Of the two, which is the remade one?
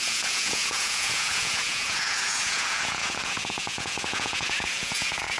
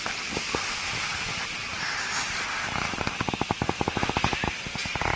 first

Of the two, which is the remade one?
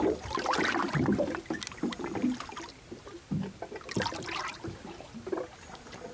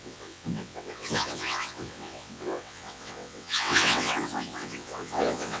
second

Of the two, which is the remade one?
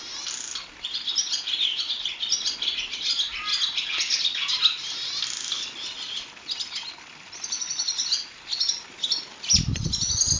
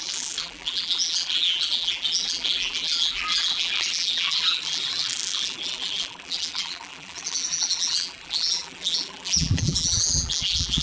second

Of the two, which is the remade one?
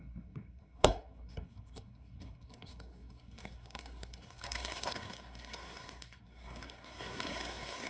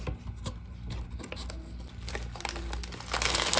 first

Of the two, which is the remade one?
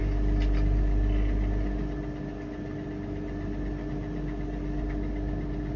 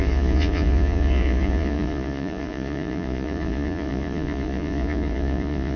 second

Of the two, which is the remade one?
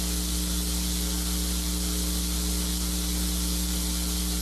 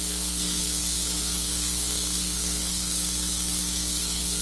second